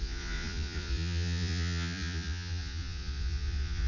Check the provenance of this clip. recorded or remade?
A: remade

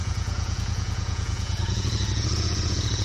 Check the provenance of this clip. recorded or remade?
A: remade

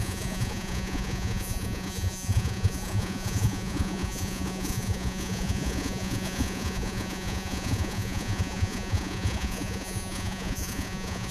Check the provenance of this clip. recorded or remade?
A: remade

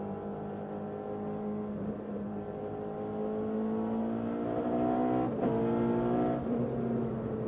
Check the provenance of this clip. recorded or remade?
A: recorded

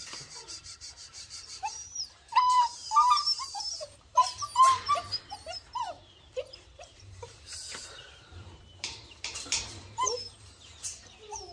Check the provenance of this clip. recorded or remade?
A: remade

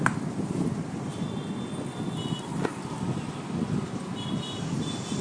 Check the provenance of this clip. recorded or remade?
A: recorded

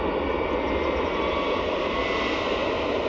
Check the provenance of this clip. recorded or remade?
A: recorded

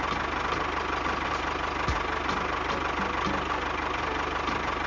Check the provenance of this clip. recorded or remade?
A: recorded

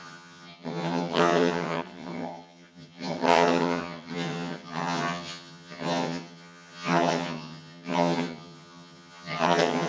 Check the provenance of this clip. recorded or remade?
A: remade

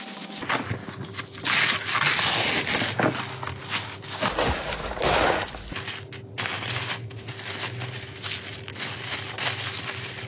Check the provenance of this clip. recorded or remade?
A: recorded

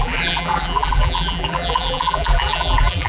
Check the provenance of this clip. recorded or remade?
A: remade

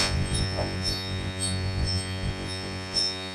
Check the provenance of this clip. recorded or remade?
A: remade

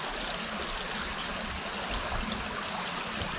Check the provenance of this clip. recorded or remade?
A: recorded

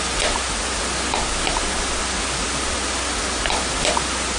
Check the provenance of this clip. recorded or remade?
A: recorded